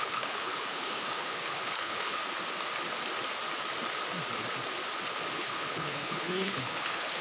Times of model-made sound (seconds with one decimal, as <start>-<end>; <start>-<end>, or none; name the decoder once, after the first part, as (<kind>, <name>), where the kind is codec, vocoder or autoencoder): 0.0-2.2 (codec, HILCodec); 5.3-7.2